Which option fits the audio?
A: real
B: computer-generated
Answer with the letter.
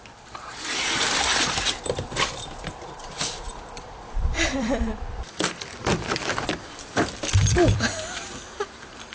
B